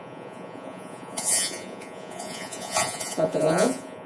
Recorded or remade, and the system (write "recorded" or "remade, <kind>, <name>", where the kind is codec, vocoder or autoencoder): remade, vocoder, Vocos